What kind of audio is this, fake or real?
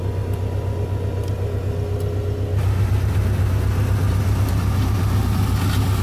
real